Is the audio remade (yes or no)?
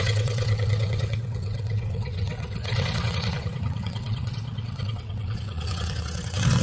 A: yes